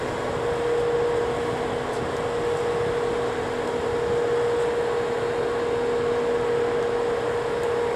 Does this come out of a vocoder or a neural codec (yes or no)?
no